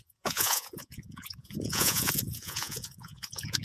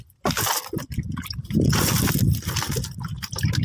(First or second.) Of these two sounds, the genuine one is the second